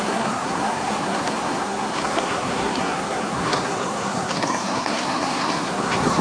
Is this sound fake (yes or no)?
yes